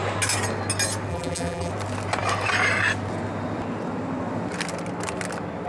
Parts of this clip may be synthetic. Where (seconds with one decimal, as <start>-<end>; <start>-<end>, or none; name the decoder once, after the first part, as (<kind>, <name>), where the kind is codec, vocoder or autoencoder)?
1.1-1.7 (vocoder, BigVGAN v2)